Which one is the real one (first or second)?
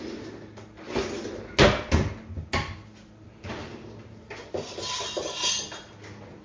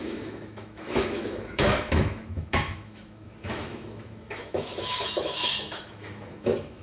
first